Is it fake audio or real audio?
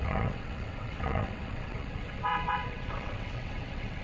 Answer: fake